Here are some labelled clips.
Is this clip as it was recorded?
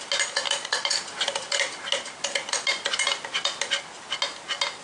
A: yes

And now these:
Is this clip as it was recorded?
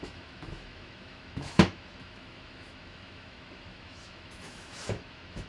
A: no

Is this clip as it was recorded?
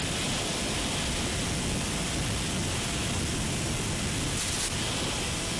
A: yes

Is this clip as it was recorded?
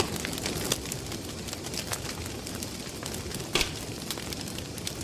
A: yes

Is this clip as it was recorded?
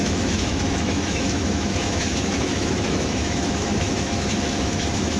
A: no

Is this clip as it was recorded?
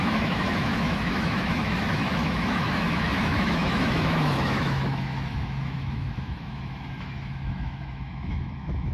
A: no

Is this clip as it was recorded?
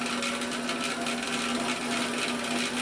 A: yes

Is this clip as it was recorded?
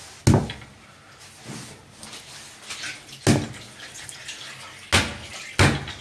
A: yes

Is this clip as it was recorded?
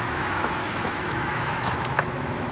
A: no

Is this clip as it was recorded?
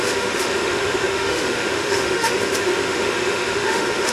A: no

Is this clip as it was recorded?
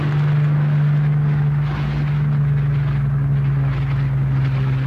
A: yes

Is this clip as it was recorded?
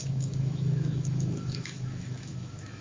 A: no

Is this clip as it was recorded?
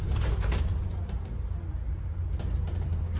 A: yes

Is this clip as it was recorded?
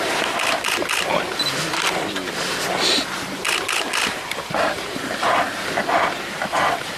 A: yes